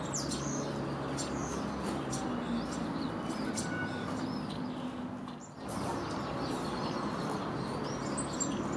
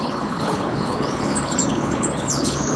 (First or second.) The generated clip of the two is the second